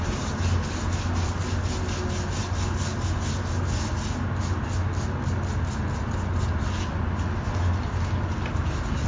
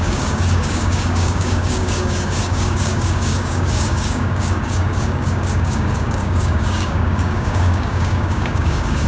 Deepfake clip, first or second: second